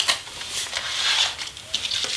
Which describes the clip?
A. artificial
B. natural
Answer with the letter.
B